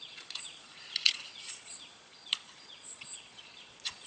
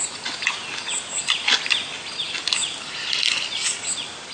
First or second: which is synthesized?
first